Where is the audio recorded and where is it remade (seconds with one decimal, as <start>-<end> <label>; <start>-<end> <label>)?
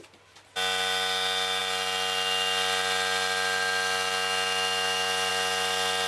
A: 0.0-6.1 recorded